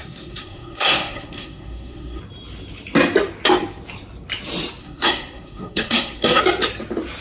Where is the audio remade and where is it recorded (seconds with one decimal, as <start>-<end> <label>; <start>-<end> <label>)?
0.0-2.2 remade; 2.2-4.8 recorded; 4.8-6.4 remade; 6.4-7.2 recorded